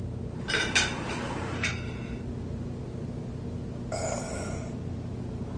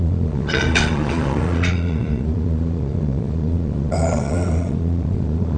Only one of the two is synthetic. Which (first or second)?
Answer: second